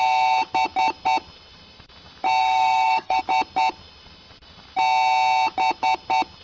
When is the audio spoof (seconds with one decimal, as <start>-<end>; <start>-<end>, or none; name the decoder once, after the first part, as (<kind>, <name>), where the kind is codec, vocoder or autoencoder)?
2.4-3.2 (codec, SNAC)